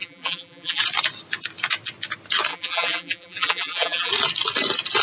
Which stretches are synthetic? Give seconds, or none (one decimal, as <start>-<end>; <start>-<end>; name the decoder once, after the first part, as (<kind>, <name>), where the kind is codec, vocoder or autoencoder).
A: 0.0-0.8 (vocoder, BigVGAN v2); 2.5-4.1